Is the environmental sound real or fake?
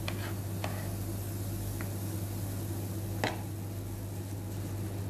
real